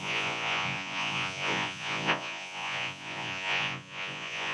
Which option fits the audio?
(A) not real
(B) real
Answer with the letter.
A